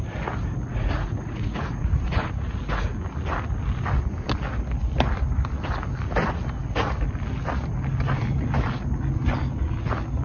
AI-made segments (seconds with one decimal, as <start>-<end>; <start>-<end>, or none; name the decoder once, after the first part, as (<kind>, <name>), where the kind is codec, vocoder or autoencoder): 0.7-2.6 (vocoder, Vocos)